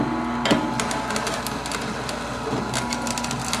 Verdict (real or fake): real